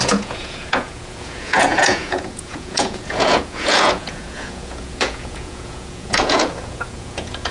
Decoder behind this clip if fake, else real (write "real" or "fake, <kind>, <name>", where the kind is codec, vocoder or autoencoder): fake, vocoder, Vocos